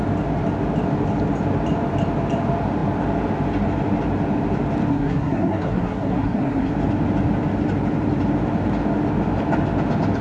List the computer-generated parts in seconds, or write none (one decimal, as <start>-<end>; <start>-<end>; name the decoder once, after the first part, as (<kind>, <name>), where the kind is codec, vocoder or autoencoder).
4.9-6.7 (codec, SNAC)